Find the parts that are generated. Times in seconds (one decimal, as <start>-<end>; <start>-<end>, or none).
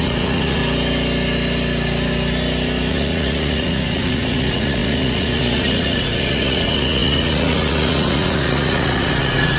0.0-0.6; 2.9-9.6